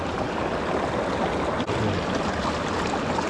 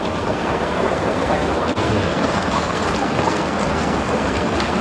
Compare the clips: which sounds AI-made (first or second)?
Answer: second